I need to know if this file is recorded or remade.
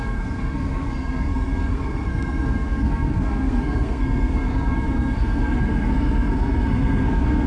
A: remade